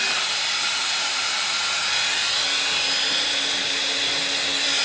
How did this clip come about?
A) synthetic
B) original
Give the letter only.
B